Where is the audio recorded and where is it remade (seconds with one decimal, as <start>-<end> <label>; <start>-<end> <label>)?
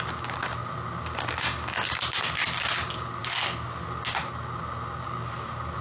0.0-5.8 recorded